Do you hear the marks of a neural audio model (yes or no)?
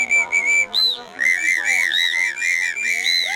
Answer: yes